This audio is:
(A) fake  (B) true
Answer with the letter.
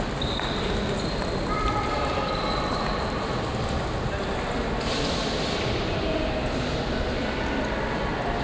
B